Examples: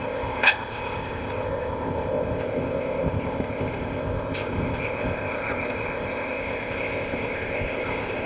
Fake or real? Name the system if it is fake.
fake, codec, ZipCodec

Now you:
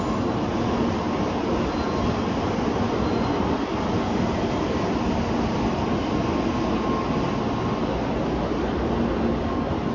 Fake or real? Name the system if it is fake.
real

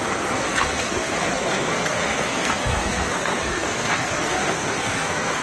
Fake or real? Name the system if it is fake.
fake, codec, SNAC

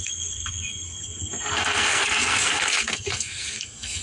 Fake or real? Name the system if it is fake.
fake, codec, SNAC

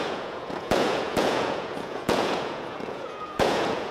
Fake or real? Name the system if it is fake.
fake, vocoder, Vocos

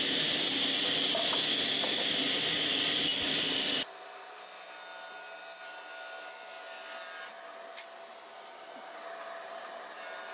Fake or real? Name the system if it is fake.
real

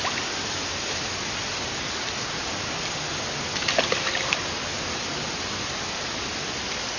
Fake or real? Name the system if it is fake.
real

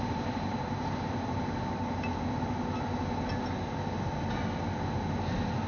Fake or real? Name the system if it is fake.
real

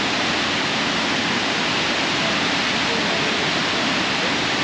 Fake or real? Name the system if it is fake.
real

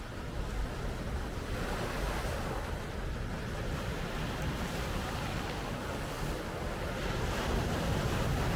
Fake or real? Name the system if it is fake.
real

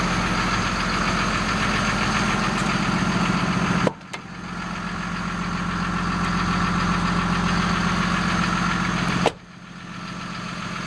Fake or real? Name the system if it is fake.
real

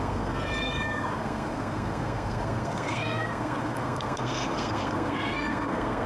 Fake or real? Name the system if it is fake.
fake, codec, SNAC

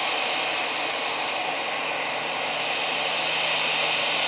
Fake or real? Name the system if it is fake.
real